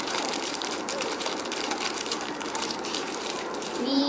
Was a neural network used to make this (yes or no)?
yes